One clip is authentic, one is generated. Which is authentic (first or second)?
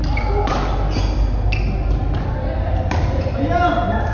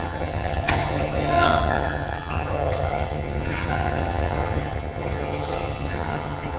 first